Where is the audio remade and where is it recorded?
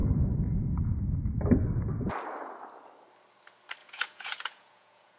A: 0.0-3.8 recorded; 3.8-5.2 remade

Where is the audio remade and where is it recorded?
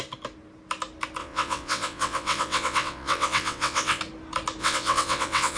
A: 0.0-1.2 recorded; 1.2-4.0 remade; 4.0-4.6 recorded; 4.6-5.6 remade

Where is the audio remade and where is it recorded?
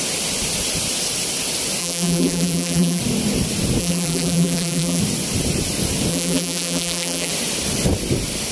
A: 0.0-1.8 recorded; 1.8-3.0 remade; 3.0-3.8 recorded; 3.8-5.0 remade; 5.0-6.1 recorded; 6.1-7.3 remade; 7.3-8.5 recorded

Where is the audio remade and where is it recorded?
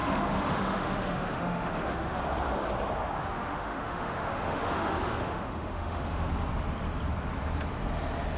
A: 0.0-2.2 remade; 2.2-3.2 recorded; 3.2-6.3 remade; 6.3-8.4 recorded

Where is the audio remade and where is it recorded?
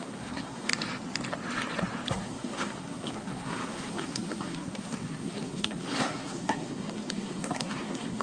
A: 0.0-0.7 remade; 0.7-2.1 recorded; 2.1-8.2 remade